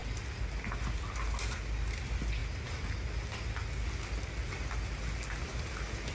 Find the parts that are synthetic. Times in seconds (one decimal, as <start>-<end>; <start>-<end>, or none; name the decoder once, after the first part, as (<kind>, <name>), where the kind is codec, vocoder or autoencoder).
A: none